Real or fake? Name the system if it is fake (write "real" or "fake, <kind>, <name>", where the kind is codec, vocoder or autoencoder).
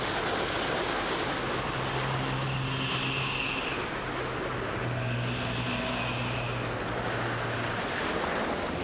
real